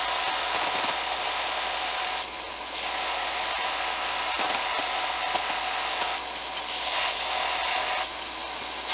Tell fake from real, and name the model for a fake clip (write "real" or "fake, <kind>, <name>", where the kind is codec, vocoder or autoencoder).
real